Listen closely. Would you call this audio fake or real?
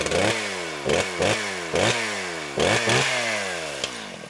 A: real